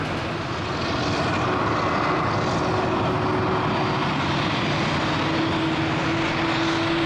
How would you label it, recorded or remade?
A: recorded